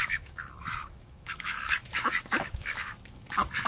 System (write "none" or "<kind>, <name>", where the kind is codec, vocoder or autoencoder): autoencoder, DAC-VAE